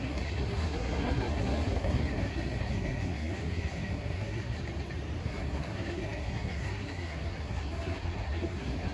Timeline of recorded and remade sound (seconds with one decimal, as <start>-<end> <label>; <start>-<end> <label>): 0.0-4.6 remade; 4.6-5.2 recorded; 5.2-8.9 remade